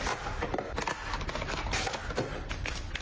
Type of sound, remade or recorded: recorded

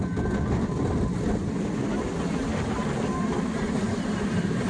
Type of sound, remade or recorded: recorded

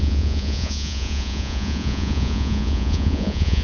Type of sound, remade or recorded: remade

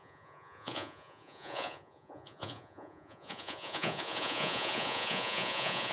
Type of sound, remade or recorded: remade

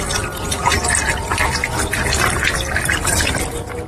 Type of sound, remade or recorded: recorded